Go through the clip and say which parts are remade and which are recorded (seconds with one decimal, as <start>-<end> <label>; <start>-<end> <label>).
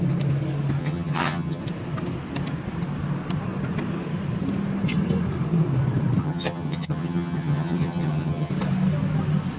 0.0-0.8 recorded; 0.8-1.6 remade; 1.6-6.2 recorded; 6.2-8.5 remade; 8.5-9.6 recorded